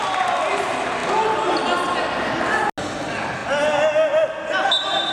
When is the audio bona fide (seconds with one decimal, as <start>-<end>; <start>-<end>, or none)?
0.0-5.1

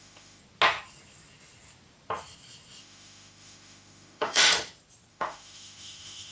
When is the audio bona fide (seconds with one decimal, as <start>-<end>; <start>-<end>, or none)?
0.4-2.8; 4.5-5.1

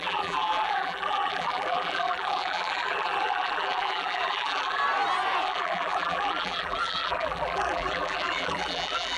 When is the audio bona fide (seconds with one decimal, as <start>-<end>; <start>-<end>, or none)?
4.8-5.4

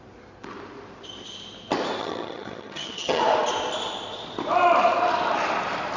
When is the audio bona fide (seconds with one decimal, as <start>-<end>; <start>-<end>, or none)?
0.0-2.0; 3.2-6.0

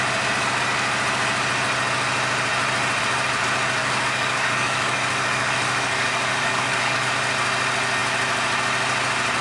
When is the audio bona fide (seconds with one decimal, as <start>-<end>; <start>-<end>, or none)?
0.0-3.8; 7.1-9.4

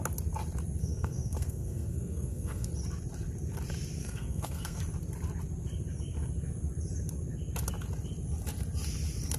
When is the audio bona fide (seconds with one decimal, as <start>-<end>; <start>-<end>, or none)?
0.0-0.8; 2.7-4.0; 4.8-9.4

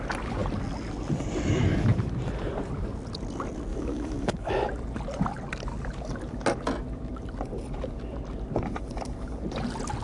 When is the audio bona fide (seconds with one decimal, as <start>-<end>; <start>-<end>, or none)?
0.0-3.7; 4.5-10.0

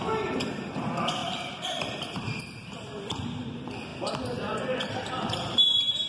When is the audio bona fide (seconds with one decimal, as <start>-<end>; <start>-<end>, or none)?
none